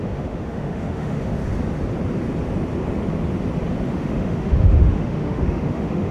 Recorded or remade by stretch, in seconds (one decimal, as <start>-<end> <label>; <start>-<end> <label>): 0.0-1.4 remade; 1.4-3.9 recorded; 3.9-6.1 remade